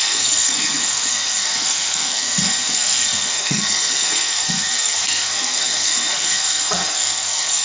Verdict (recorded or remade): remade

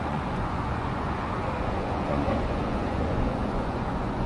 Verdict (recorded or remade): remade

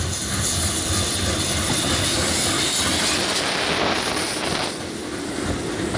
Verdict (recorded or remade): recorded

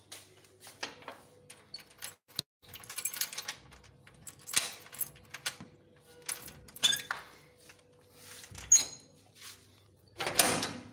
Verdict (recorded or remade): recorded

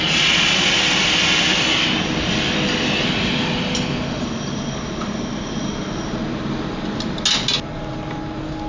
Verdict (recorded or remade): recorded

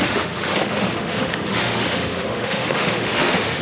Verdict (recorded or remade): remade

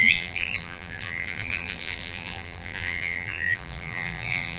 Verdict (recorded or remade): remade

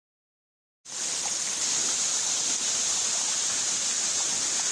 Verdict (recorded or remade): recorded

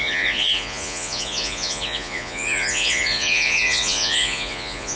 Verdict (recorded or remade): remade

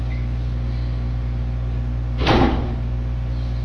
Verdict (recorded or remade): recorded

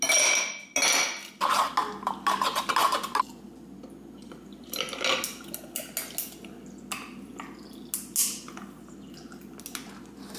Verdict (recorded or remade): recorded